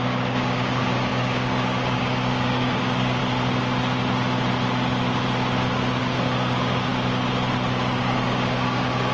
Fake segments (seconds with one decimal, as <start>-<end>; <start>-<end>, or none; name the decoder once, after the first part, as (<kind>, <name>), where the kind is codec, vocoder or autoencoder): 0.0-3.2 (codec, DAC); 6.0-6.9; 8.0-9.1